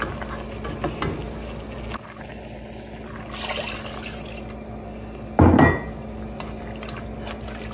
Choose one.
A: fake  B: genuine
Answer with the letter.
B